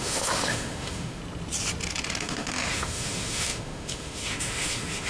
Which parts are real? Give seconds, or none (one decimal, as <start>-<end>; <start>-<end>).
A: 1.2-2.2